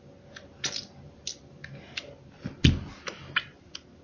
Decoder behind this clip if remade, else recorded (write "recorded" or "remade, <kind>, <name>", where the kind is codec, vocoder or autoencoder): recorded